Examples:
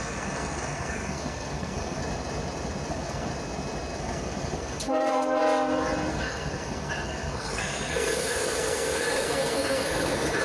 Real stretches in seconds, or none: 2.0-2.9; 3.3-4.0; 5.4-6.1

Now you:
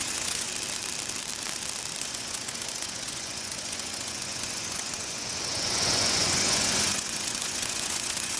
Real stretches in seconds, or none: 0.5-2.0

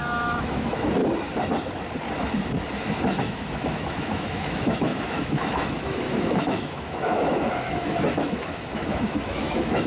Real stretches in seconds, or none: 1.0-3.2

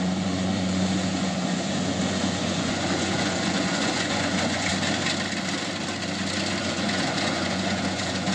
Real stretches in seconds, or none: 4.7-6.6

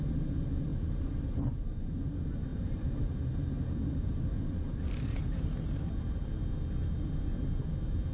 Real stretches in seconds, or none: 0.0-0.7; 1.7-2.5; 6.2-8.1